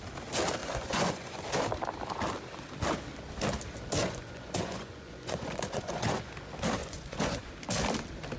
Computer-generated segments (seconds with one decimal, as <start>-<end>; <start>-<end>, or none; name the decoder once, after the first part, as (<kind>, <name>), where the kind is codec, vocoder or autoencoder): 0.6-1.4 (vocoder, Vocos); 4.0-6.3; 6.8-7.5